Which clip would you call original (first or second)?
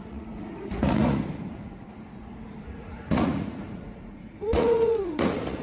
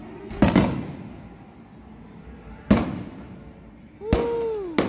second